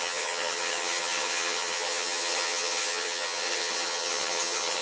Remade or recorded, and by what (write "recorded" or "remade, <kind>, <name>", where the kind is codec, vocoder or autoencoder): remade, vocoder, HiFi-GAN